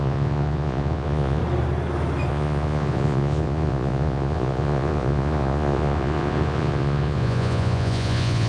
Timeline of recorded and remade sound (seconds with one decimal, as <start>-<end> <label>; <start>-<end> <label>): 0.0-1.4 remade; 1.4-2.3 recorded; 2.3-8.5 remade